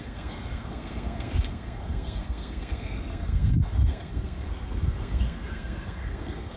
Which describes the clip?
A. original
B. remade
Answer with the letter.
B